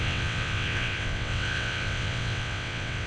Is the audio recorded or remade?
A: remade